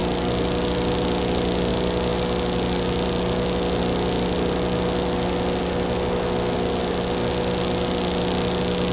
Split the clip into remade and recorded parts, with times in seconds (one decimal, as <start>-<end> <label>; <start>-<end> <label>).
0.0-8.9 recorded